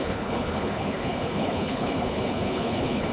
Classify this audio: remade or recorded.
remade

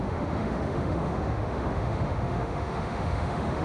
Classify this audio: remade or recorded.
remade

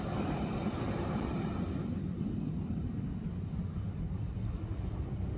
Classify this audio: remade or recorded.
recorded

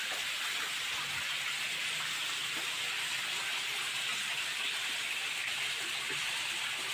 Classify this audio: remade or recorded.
recorded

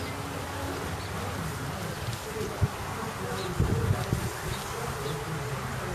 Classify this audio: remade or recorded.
recorded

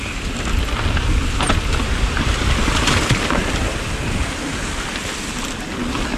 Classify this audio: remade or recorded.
recorded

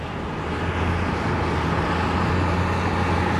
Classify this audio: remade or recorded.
recorded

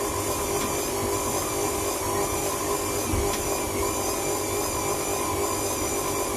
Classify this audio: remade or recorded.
recorded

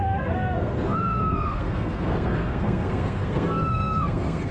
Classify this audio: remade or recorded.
remade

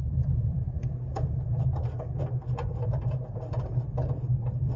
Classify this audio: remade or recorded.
remade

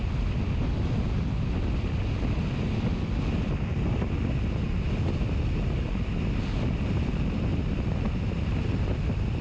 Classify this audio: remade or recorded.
recorded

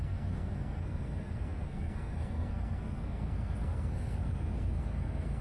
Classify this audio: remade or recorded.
remade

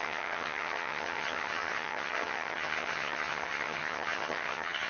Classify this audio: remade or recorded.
remade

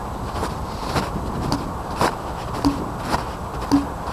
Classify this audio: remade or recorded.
recorded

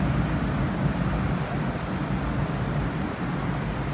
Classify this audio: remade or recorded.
recorded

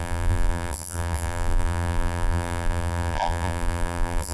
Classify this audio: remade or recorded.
remade